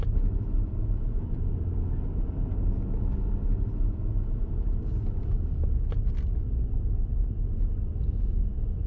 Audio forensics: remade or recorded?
recorded